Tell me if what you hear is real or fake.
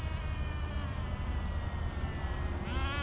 real